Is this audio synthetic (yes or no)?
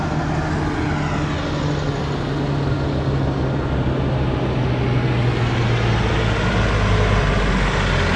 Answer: no